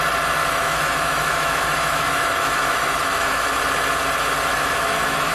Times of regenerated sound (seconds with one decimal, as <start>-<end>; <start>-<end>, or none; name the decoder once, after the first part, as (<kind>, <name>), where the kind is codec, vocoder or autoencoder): 0.4-3.6 (autoencoder, DAC-VAE); 4.5-5.3